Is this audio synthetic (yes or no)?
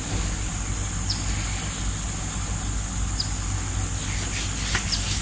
no